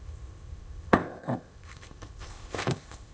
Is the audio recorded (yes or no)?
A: no